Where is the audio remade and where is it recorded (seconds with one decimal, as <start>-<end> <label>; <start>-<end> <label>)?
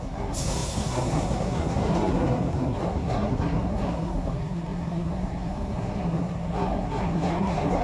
0.0-7.8 remade